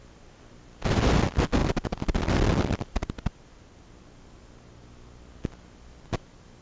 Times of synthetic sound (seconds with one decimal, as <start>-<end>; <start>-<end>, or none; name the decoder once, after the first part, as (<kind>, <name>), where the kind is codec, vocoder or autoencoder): none